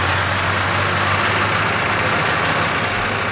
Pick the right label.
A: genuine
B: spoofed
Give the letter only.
A